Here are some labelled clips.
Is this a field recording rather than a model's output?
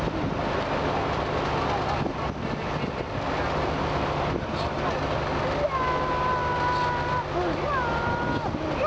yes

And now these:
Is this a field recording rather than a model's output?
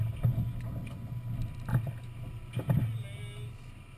yes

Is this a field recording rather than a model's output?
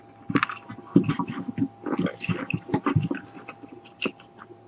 yes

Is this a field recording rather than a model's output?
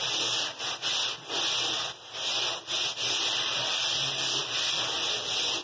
yes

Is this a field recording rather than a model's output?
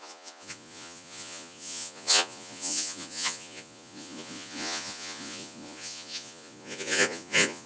no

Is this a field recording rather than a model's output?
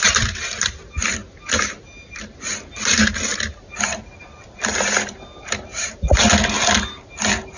yes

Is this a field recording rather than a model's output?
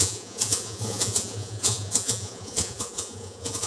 no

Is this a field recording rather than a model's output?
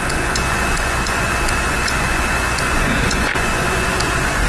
no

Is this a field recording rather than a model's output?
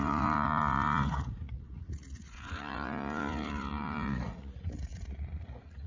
no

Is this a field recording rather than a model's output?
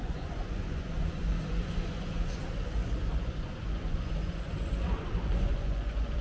no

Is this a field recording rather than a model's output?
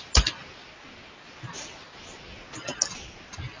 yes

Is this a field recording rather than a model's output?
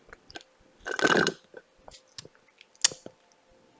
yes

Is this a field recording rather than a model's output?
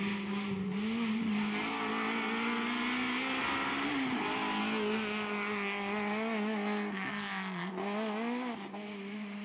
yes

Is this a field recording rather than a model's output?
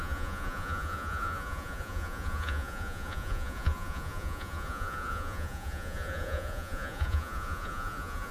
no